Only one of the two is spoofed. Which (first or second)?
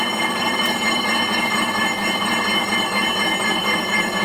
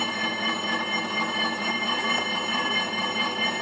first